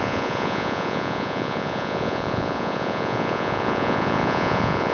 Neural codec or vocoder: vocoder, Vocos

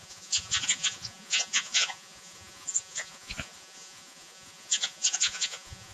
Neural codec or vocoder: vocoder, Vocos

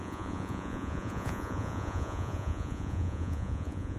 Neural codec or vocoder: vocoder, Vocos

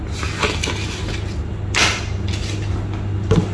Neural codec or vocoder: none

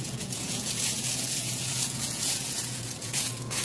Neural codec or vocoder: vocoder, Vocos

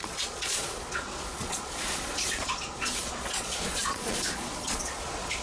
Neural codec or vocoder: vocoder, Vocos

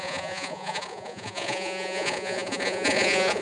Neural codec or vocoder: vocoder, Vocos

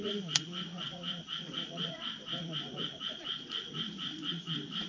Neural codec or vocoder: vocoder, Vocos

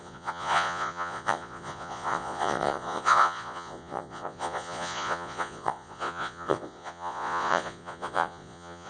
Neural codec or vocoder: vocoder, Vocos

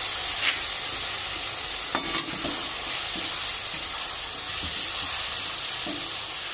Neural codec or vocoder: none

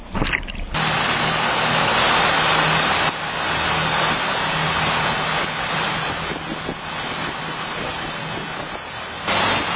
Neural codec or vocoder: none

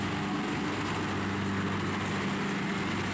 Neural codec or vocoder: none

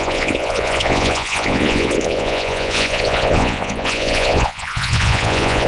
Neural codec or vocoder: vocoder, Vocos